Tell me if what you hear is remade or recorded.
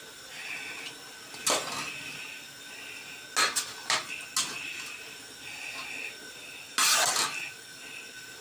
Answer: recorded